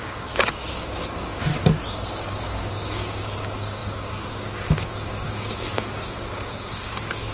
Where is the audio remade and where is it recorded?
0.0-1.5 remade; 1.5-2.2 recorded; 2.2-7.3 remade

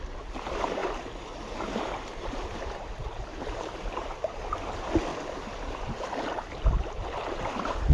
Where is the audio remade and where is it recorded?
0.0-3.3 recorded; 3.3-4.3 remade; 4.3-7.9 recorded

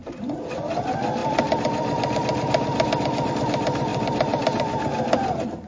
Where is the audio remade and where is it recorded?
0.0-5.7 recorded

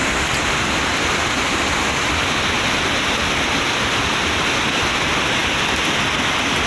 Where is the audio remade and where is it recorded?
0.0-6.7 recorded